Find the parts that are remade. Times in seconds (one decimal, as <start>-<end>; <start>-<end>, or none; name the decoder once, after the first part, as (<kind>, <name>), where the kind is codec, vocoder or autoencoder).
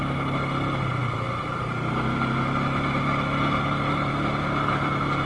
none